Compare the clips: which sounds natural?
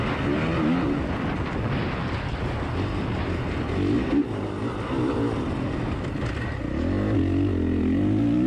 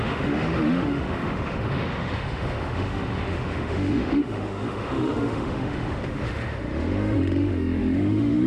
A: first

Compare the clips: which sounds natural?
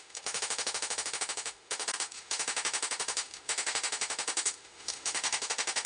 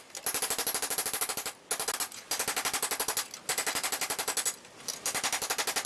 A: second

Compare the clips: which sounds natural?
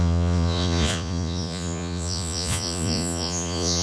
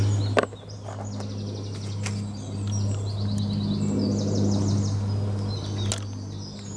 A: second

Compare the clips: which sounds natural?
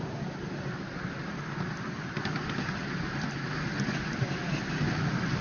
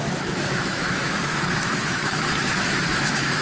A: first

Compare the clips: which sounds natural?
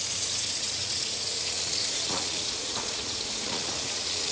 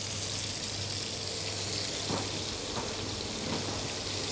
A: second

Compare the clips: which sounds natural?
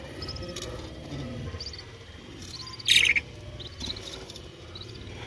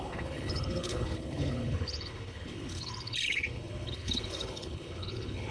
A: first